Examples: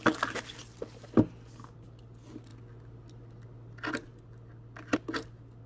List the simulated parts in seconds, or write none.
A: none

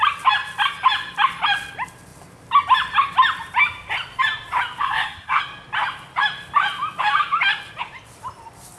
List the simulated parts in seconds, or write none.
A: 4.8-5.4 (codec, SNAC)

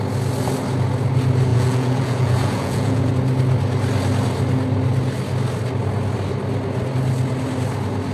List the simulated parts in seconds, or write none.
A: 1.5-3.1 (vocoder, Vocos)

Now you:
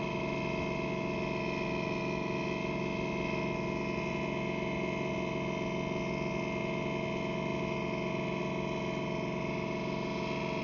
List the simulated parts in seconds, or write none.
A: none

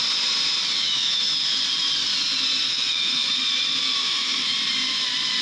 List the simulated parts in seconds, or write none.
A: 0.8-1.3 (autoencoder, DAC-VAE); 2.7-3.4; 4.0-4.5

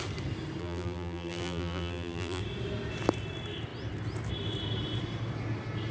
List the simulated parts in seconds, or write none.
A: 0.6-2.4 (vocoder, BigVGAN v2)